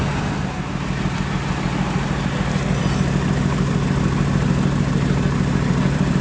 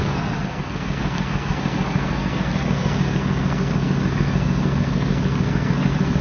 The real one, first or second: first